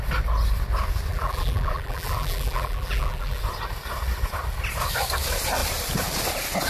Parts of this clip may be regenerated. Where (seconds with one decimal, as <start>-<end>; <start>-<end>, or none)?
1.1-3.4